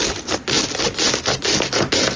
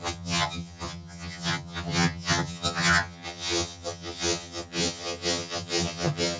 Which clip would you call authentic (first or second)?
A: first